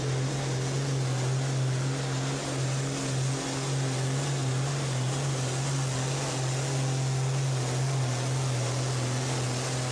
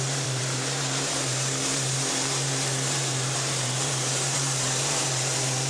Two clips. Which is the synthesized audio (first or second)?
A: second